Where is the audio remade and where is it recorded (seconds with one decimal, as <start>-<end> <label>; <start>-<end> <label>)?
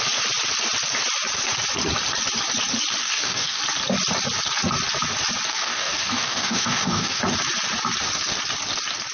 0.0-3.0 recorded; 3.0-3.6 remade; 3.6-5.5 recorded; 5.5-7.2 remade; 7.2-9.1 recorded